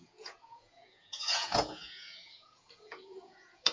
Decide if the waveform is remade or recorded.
remade